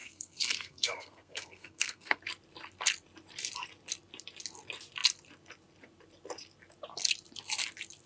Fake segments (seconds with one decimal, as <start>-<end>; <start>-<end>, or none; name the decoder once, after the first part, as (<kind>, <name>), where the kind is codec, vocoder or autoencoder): 0.0-2.2 (codec, SNAC)